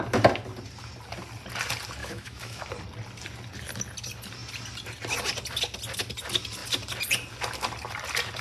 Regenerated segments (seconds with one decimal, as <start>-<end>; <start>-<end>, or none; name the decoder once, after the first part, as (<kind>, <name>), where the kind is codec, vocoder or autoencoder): 2.0-2.7 (autoencoder, DAC-VAE)